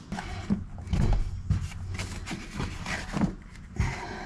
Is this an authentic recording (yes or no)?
yes